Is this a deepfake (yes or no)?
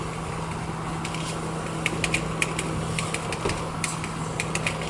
no